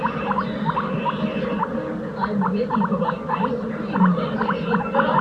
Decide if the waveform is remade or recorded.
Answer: recorded